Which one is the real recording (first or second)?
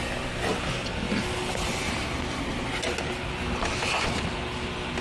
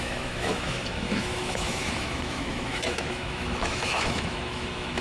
first